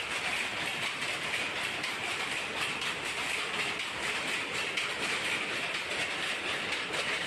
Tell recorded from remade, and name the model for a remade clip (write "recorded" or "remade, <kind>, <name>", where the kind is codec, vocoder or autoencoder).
recorded